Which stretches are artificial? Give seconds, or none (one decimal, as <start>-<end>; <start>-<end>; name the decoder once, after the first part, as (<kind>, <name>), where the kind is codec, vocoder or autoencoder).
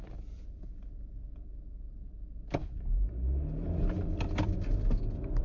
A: 0.0-1.2 (vocoder, BigVGAN v2); 1.8-2.6; 4.0-5.4